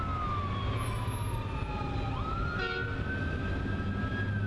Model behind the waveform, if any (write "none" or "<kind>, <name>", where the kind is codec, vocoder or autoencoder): none